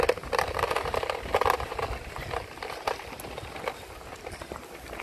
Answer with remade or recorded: recorded